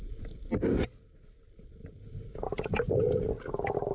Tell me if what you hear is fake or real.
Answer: real